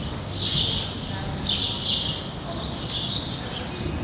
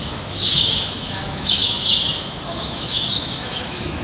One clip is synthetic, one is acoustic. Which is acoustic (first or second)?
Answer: first